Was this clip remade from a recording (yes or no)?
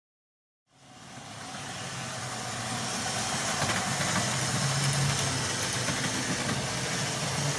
no